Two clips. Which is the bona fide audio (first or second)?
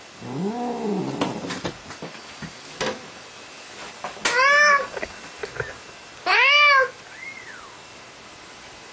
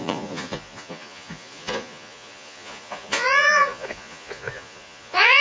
first